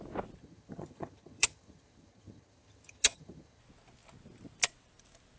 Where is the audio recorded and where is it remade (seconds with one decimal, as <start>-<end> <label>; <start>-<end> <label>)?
0.0-0.4 recorded; 0.4-3.6 remade; 3.6-5.4 recorded